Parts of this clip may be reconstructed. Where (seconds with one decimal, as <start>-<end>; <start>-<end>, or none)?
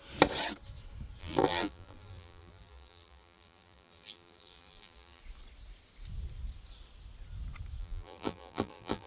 1.2-5.2; 7.8-9.1